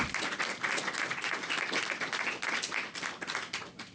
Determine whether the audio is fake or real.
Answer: real